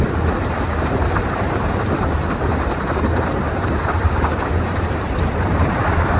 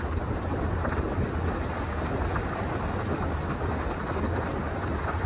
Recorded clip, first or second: second